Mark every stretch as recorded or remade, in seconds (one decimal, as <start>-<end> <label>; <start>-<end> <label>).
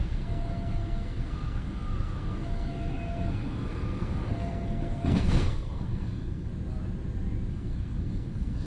0.0-6.5 remade; 6.5-7.5 recorded; 7.5-8.7 remade